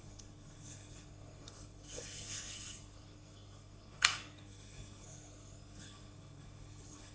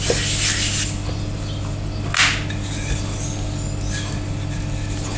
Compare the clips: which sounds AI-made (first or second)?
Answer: first